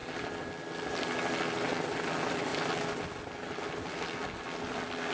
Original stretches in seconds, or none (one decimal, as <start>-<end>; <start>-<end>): 0.0-5.1